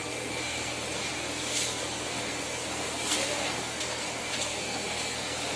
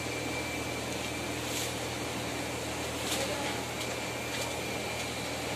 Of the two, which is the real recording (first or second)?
second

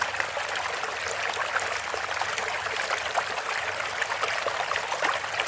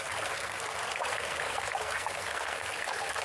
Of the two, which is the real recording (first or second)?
first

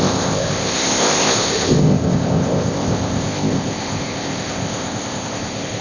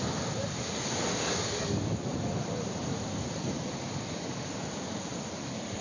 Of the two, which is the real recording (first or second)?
second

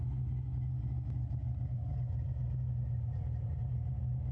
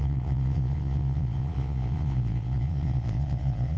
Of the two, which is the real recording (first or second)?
first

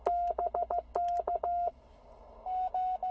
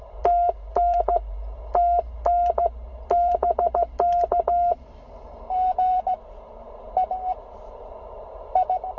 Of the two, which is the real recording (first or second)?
first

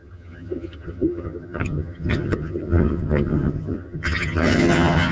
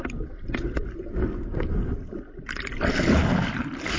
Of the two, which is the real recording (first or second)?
second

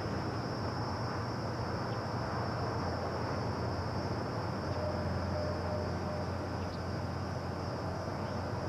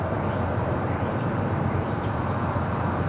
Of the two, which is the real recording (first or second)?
first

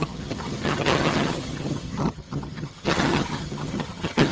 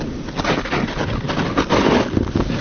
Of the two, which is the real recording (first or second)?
second